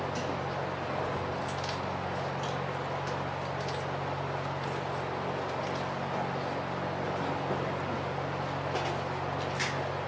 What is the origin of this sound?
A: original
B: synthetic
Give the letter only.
A